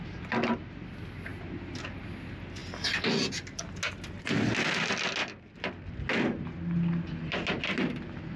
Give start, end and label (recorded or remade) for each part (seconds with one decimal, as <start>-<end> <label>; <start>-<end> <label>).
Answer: 0.0-8.4 recorded

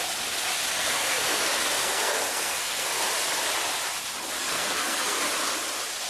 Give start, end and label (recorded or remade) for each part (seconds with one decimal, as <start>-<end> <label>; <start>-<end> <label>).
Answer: 0.0-0.7 recorded; 0.7-2.9 remade; 2.9-4.4 recorded; 4.4-5.2 remade; 5.2-6.1 recorded

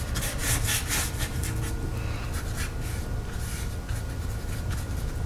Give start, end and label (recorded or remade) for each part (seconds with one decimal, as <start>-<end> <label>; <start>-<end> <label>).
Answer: 0.0-5.3 recorded

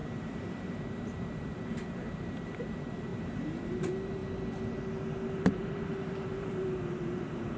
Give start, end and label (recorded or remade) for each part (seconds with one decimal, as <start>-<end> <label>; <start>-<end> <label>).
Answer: 0.0-4.2 remade; 4.2-5.4 recorded; 5.4-7.6 remade

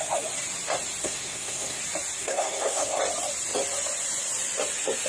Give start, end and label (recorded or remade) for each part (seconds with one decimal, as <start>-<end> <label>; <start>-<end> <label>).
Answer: 0.0-1.0 recorded; 1.0-1.8 remade; 1.8-2.2 recorded; 2.2-3.0 remade; 3.0-5.1 recorded

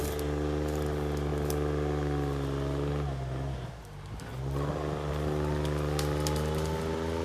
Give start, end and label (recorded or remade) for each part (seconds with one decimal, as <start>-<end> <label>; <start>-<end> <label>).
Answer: 0.0-7.2 recorded

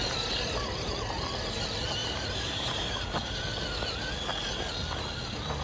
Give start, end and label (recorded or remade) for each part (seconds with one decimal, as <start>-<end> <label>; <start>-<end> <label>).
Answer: 0.0-2.0 recorded; 2.0-3.4 remade; 3.4-5.6 recorded

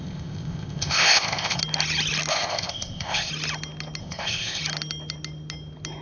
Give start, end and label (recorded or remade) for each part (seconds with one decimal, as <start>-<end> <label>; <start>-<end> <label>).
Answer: 0.0-1.6 remade; 1.6-2.3 recorded; 2.3-3.3 remade; 3.3-4.0 recorded; 4.0-4.6 remade; 4.6-6.0 recorded